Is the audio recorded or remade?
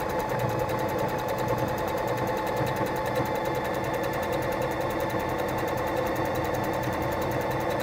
remade